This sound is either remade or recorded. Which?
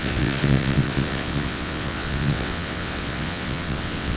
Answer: remade